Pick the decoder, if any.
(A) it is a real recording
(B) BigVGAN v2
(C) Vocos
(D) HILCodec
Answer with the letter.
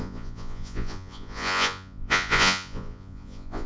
C